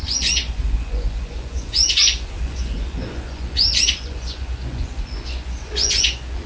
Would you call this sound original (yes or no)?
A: no